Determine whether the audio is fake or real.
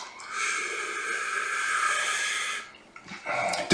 real